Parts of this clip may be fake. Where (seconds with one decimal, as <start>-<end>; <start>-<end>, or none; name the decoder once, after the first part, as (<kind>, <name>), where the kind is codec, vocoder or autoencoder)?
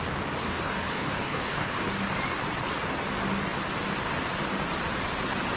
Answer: 0.4-1.9 (codec, HILCodec)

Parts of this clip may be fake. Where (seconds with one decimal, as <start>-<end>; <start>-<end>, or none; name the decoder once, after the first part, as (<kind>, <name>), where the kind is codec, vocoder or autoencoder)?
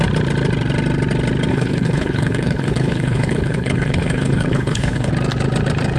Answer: 1.5-5.1 (codec, HILCodec)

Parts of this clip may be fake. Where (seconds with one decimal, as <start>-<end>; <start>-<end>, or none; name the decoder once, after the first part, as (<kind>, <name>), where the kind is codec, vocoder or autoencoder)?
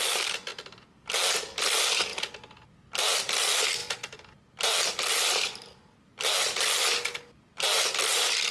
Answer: none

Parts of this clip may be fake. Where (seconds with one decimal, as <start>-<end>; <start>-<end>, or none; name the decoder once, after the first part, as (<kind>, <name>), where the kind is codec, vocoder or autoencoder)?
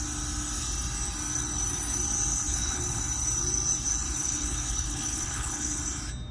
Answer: 2.3-3.0 (codec, HILCodec); 4.2-5.8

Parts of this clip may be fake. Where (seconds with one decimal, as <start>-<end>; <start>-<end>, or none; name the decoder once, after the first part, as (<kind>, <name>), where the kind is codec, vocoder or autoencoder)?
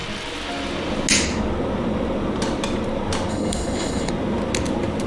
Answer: 3.3-4.1 (codec, HILCodec)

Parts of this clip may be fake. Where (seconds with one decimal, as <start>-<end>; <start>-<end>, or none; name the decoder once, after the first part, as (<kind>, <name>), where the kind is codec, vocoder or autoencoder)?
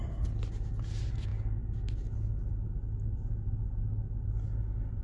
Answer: none